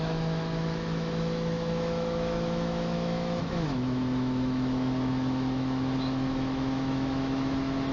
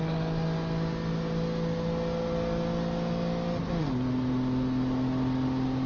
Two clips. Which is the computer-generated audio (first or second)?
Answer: first